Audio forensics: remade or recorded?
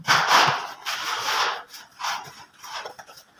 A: recorded